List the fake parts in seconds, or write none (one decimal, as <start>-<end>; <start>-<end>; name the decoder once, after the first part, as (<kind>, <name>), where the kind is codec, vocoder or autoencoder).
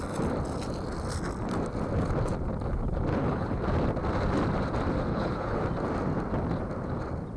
3.1-3.6 (codec, HILCodec); 5.1-5.6